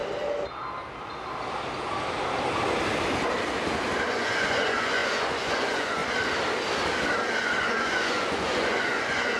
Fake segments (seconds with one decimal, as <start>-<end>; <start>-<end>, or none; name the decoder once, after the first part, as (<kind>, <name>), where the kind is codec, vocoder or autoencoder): 4.1-6.0 (vocoder, Vocos); 7.4-9.4